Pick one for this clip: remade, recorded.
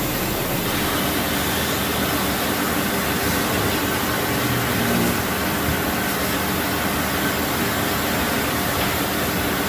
recorded